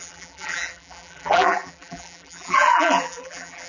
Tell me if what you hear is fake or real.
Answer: fake